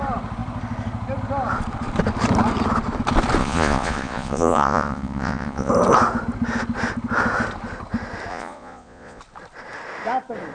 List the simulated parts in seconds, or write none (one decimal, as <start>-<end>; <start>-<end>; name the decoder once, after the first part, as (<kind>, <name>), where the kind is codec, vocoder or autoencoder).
3.4-5.7 (vocoder, Vocos); 8.3-9.2